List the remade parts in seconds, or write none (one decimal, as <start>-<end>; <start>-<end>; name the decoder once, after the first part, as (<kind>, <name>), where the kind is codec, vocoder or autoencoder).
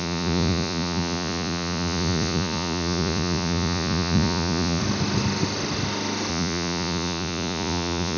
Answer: 0.0-4.8 (vocoder, Vocos); 6.3-8.2